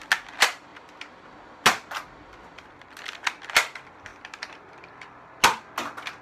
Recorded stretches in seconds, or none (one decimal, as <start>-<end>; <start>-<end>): 0.0-6.2